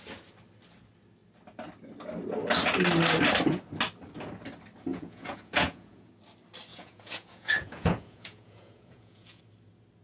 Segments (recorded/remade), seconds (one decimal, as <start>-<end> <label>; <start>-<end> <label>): 0.0-4.9 recorded; 4.9-6.1 remade; 6.1-6.7 recorded; 6.7-9.4 remade; 9.4-10.0 recorded